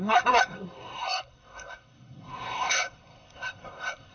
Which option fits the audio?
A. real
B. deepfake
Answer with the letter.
B